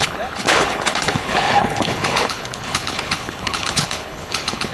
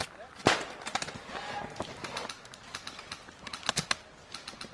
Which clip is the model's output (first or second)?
first